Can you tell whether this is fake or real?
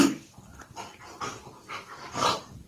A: fake